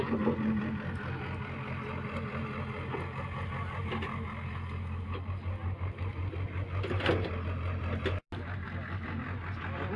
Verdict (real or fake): real